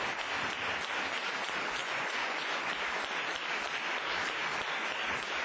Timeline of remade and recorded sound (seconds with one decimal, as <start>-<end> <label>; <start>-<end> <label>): 0.0-1.8 recorded; 1.8-2.7 remade; 2.7-5.4 recorded